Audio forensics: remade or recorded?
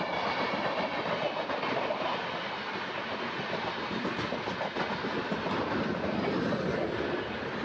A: recorded